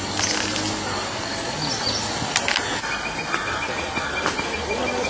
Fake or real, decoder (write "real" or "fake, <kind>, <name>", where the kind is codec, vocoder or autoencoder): real